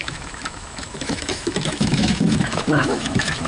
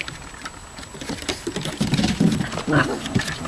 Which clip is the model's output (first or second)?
first